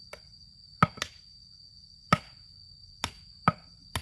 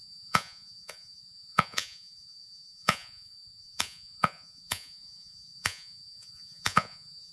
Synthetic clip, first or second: second